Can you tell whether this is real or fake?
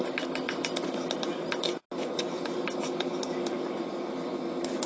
real